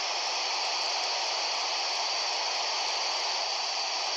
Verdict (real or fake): real